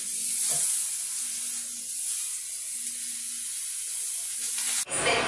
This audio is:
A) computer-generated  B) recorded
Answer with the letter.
B